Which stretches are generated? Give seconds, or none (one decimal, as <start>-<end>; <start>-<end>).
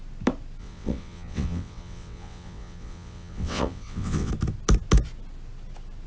0.6-4.3